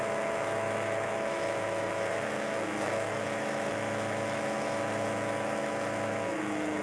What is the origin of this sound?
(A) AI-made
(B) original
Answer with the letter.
A